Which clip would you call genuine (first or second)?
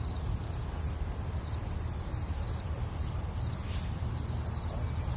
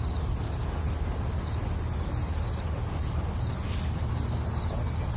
second